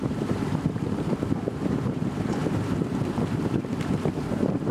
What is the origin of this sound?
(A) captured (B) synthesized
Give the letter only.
B